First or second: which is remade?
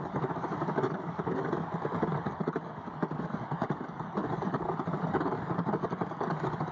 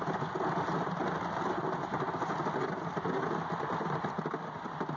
first